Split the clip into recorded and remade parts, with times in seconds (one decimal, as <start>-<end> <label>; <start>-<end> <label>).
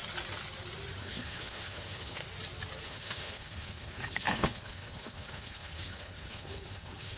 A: 0.0-1.0 recorded; 1.0-2.2 remade; 2.2-2.8 recorded; 2.8-7.2 remade